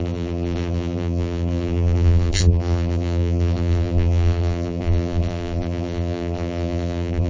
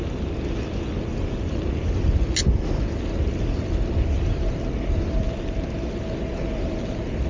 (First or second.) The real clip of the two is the second